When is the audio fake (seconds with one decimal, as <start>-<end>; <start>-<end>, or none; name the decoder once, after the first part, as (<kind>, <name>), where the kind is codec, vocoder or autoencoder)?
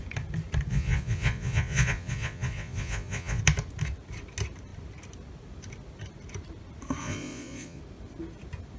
0.7-3.4 (vocoder, Vocos); 7.0-7.8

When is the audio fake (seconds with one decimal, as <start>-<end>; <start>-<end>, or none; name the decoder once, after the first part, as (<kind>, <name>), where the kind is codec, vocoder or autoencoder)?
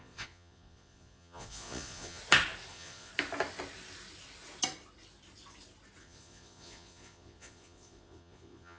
0.0-2.2 (vocoder, Vocos); 2.7-3.1; 6.0-8.8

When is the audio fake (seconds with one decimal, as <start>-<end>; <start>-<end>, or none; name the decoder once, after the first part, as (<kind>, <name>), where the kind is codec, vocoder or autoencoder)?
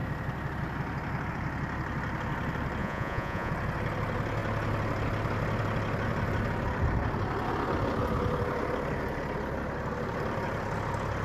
2.8-3.5 (vocoder, Vocos)